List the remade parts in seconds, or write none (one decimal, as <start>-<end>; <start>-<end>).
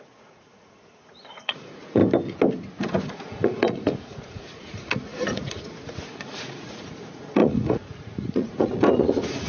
0.0-2.0; 2.8-9.5